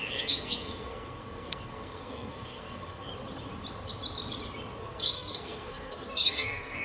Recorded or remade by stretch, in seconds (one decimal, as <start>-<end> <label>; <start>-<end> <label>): 0.0-3.1 remade; 3.1-4.8 recorded; 4.8-6.8 remade